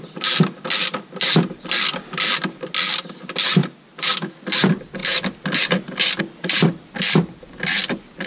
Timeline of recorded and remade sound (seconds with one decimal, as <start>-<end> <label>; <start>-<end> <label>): 0.0-8.3 recorded